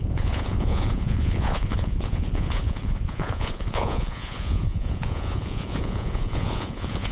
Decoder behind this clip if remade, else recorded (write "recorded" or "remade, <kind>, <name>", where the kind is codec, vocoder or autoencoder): remade, vocoder, Vocos